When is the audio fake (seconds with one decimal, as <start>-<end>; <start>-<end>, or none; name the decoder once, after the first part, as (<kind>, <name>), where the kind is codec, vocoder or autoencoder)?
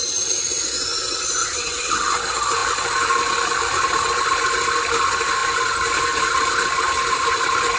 1.4-2.2 (vocoder, WaveNeXt)